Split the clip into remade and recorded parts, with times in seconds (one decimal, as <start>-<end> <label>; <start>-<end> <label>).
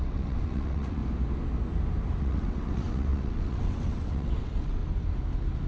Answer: 0.0-1.0 remade; 1.0-2.2 recorded; 2.2-4.8 remade; 4.8-5.7 recorded